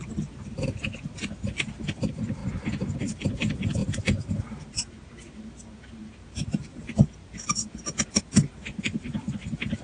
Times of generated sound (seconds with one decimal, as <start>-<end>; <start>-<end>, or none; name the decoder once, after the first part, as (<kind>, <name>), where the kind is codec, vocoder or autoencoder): 0.0-2.4 (vocoder, BigVGAN v2); 3.0-9.8